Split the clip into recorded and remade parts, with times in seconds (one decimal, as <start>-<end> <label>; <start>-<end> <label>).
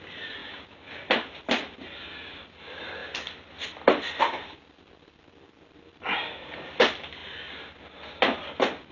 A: 0.0-8.9 recorded